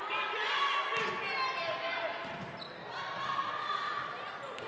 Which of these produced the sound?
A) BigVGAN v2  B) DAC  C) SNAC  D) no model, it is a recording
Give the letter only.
D